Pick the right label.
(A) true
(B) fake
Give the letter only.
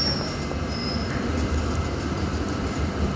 B